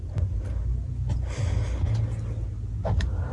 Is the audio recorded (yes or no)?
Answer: yes